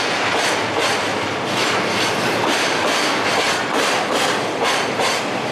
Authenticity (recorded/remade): recorded